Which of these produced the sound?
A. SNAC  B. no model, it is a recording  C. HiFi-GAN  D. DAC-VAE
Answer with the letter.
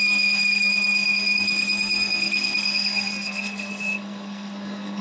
A